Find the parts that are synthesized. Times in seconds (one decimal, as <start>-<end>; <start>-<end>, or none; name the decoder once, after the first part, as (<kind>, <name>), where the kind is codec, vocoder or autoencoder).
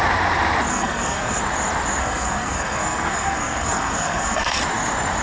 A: 0.7-1.4 (codec, SNAC); 2.0-4.6